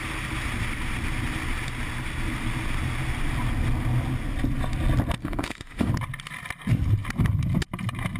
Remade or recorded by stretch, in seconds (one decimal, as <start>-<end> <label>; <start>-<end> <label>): 0.0-5.2 recorded; 5.2-5.9 remade; 5.9-8.2 recorded